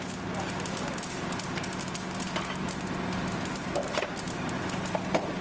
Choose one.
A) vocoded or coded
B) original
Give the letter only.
B